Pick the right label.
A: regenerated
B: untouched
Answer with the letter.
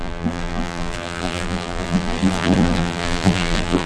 A